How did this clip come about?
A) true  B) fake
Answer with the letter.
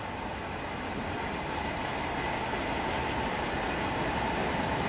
A